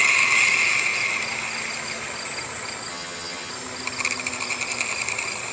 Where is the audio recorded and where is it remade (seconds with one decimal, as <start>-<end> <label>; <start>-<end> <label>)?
0.0-2.9 recorded; 2.9-3.5 remade; 3.5-5.5 recorded

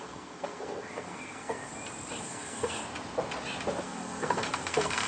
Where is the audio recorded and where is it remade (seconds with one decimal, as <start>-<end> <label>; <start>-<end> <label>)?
0.0-1.7 remade; 1.7-2.2 recorded; 2.2-2.8 remade; 2.8-3.8 recorded; 3.8-5.1 remade

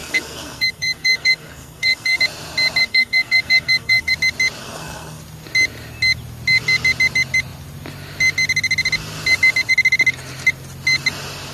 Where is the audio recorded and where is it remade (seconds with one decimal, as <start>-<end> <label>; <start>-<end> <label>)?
0.0-2.2 remade; 2.2-2.8 recorded; 2.8-4.1 remade; 4.1-4.6 recorded; 4.6-5.2 remade; 5.2-11.5 recorded